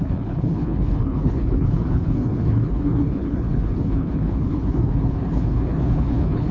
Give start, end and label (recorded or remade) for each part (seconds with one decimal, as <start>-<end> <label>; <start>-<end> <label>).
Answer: 0.0-6.5 remade